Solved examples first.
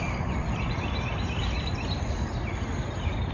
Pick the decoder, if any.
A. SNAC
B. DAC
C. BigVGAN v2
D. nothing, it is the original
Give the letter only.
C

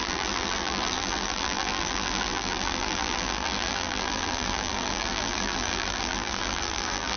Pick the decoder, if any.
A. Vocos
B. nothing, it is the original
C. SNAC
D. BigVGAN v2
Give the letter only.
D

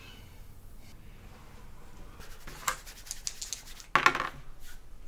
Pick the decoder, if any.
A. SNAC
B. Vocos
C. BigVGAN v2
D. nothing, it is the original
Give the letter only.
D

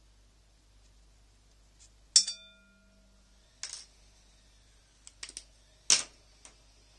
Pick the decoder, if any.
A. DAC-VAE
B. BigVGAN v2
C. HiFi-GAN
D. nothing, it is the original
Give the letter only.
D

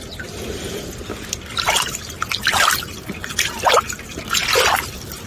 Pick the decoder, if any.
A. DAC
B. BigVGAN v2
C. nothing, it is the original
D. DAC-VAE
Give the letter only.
C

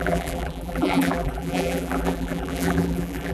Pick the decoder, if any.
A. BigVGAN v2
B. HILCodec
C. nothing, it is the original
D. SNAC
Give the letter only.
A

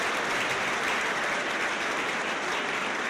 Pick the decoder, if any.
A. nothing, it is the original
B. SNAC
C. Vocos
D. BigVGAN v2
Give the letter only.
D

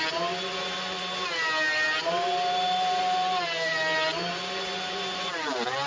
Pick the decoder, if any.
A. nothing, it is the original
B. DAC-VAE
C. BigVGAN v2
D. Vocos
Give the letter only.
C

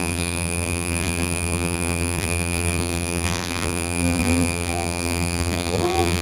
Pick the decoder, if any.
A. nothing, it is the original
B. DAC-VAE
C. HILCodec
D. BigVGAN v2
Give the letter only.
D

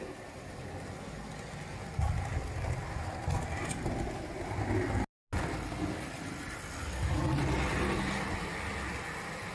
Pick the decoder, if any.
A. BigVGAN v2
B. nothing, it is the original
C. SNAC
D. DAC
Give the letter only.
B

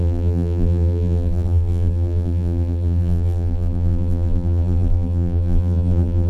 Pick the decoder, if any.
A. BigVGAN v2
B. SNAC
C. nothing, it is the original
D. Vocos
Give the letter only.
A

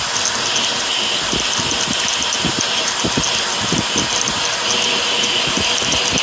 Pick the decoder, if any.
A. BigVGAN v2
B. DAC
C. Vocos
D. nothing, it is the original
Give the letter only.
D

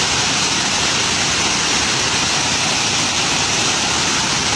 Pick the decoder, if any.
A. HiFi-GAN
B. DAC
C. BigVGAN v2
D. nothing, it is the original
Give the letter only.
C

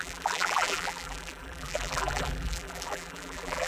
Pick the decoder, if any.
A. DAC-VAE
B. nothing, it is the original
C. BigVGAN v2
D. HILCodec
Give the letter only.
C